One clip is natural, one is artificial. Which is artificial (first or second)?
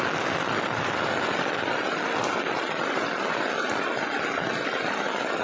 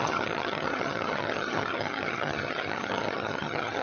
second